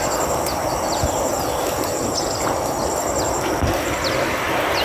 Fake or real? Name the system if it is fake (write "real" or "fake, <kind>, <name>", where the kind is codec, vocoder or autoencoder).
real